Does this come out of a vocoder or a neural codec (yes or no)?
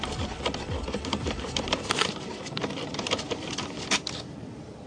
yes